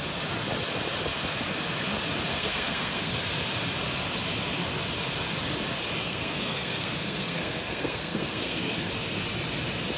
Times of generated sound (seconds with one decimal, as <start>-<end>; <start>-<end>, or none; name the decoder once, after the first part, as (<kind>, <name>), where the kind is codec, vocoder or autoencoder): 2.3-3.1 (codec, SNAC); 6.0-8.9